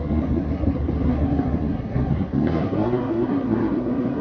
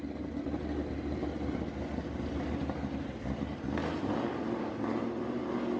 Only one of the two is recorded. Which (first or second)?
second